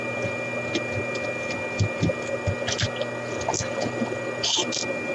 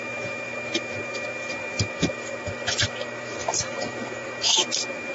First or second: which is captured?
first